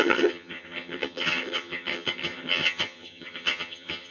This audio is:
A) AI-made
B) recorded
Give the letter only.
A